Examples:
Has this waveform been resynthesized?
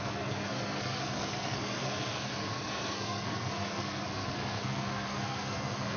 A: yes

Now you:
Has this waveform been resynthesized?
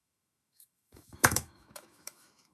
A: yes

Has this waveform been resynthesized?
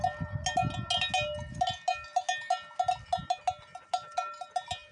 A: no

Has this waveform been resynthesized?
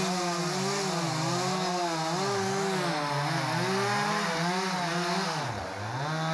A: no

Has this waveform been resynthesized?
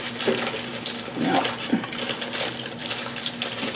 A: no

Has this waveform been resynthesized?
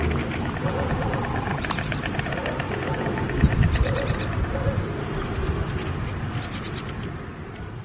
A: no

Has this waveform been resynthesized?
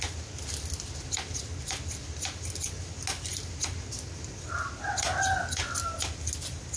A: no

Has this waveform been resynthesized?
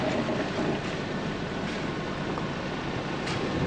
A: no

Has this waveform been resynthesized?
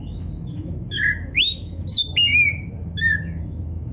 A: yes